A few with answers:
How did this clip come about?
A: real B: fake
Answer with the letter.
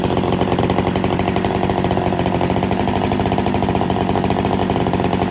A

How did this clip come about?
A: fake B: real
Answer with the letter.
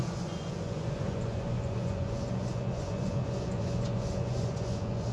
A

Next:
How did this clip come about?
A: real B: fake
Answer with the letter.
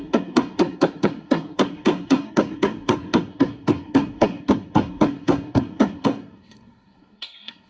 B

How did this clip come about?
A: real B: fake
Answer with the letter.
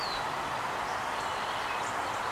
A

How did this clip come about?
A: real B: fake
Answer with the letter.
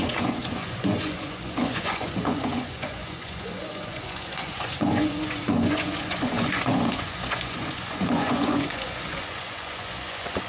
B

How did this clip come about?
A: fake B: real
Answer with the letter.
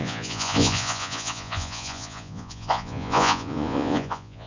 A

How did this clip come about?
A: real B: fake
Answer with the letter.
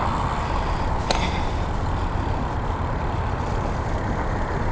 A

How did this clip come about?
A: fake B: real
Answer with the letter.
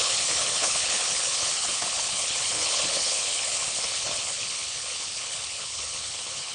A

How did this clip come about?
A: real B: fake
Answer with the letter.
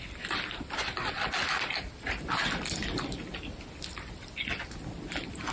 B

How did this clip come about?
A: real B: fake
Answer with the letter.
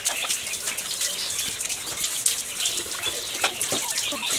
A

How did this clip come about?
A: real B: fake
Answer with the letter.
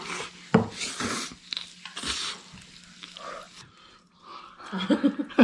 A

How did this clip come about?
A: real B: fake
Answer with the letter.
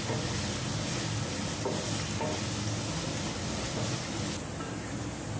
A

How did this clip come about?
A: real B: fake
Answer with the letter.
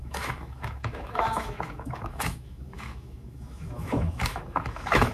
B